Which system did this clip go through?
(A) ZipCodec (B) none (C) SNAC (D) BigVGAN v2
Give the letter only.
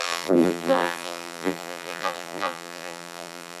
D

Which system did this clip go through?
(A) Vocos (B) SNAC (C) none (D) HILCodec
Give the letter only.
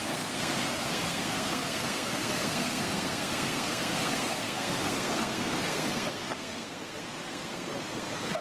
B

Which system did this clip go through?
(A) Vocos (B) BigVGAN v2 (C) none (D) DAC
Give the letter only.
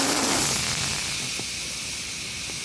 C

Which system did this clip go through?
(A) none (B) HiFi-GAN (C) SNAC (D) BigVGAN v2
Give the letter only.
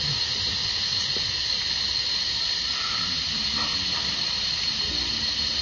A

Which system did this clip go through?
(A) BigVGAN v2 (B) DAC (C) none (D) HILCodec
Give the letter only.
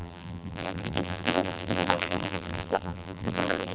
A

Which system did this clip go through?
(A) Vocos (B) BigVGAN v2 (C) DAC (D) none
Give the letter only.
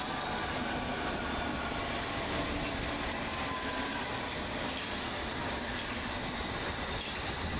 D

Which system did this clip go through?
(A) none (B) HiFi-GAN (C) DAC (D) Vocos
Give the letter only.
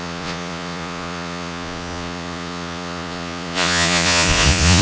D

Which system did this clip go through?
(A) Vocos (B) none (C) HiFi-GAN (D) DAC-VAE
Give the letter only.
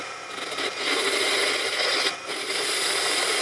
B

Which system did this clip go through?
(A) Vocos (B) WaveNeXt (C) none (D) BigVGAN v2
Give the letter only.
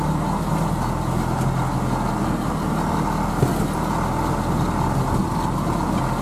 C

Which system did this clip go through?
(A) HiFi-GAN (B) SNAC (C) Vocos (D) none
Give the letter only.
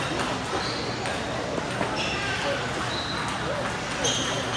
D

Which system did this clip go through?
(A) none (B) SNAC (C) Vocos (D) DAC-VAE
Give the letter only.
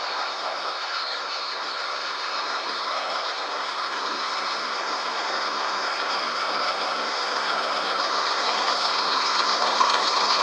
B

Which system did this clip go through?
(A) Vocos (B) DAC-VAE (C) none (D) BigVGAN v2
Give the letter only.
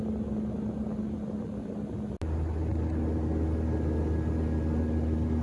C